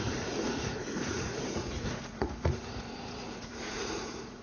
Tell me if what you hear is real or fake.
fake